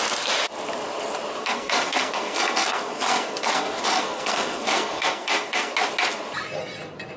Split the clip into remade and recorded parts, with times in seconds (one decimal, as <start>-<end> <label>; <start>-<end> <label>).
0.0-1.4 recorded; 1.4-5.7 remade; 5.7-7.2 recorded